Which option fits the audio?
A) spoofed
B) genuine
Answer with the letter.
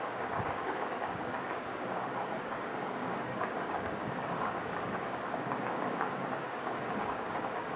A